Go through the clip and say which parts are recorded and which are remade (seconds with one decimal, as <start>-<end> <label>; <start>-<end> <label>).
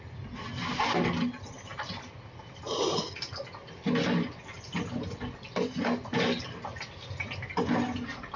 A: 0.0-8.4 recorded